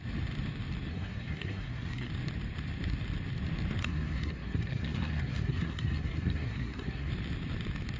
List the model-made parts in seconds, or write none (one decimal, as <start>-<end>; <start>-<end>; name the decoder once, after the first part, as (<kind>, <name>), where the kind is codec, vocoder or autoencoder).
0.9-2.1 (codec, SNAC); 3.8-7.1

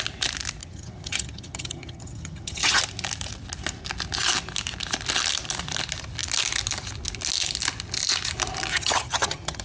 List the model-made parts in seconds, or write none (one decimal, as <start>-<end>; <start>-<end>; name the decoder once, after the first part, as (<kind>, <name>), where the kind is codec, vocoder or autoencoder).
0.6-2.8 (vocoder, HiFi-GAN); 8.7-9.6